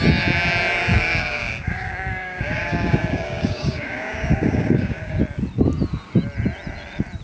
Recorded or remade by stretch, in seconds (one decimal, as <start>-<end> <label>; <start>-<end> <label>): 0.0-0.9 recorded; 0.9-5.2 remade; 5.2-7.2 recorded